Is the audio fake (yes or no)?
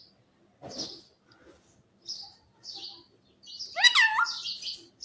yes